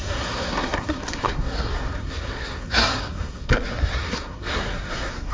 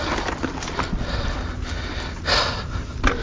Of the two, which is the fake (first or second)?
first